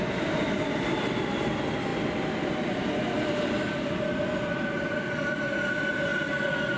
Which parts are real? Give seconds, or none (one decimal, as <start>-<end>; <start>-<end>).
0.0-6.8